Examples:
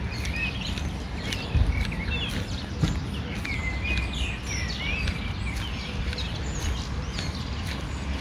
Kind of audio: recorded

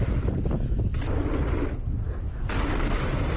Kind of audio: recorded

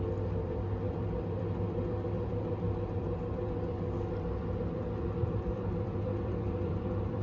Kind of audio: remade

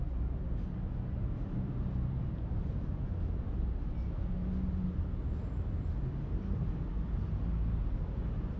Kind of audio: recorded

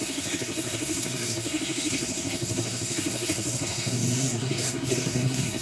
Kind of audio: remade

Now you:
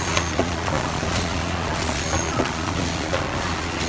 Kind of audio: remade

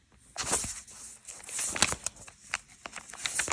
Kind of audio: recorded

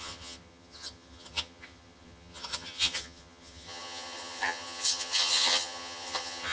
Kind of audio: remade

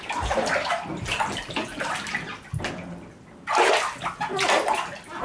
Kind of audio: recorded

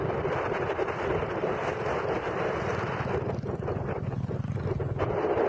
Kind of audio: recorded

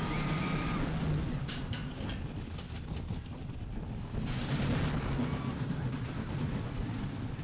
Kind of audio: recorded